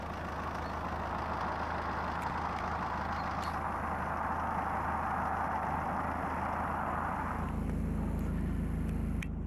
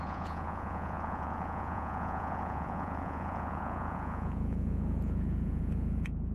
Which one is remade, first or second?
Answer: second